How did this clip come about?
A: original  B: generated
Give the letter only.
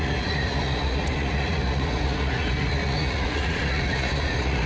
B